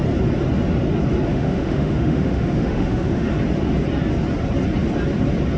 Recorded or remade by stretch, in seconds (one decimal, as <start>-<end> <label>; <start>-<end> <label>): 0.0-1.3 recorded; 1.3-3.3 remade; 3.3-5.6 recorded